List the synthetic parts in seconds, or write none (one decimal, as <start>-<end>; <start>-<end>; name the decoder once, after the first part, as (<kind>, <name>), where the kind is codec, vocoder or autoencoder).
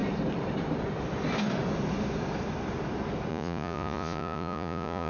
3.3-5.1 (vocoder, Vocos)